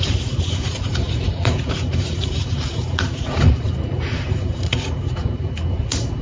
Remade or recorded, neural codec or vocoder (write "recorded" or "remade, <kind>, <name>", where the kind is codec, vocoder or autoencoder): remade, vocoder, Vocos